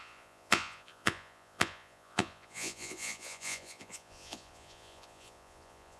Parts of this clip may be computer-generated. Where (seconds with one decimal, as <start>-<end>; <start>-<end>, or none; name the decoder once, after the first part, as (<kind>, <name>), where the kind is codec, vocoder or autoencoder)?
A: 0.0-6.0 (vocoder, Vocos)